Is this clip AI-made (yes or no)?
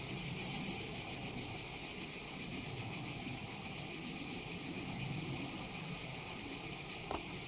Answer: no